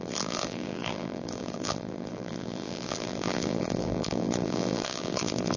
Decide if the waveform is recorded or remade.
remade